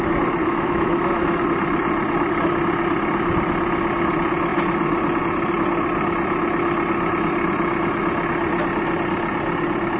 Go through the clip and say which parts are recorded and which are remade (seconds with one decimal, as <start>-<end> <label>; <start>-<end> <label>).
0.0-0.4 recorded; 0.4-1.4 remade; 1.4-10.0 recorded